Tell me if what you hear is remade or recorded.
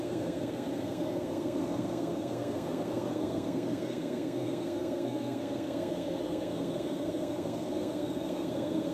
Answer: remade